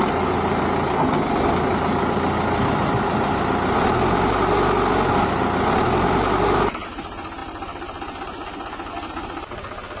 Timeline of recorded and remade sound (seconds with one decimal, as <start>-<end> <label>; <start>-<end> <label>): 0.0-10.0 recorded